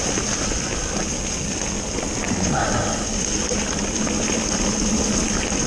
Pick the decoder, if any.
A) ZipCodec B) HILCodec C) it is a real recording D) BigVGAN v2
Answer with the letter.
C